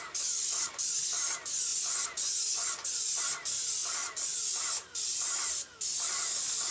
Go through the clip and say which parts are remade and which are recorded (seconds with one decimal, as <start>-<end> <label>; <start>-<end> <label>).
0.0-1.7 recorded; 1.7-3.2 remade; 3.2-6.7 recorded